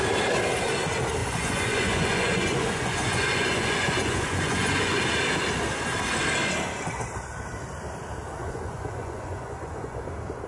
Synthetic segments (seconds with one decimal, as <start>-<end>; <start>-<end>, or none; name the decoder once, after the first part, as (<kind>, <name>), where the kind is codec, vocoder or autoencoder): 1.2-5.0 (vocoder, Vocos); 8.4-10.0